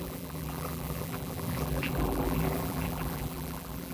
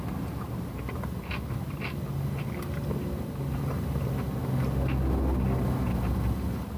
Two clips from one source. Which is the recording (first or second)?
second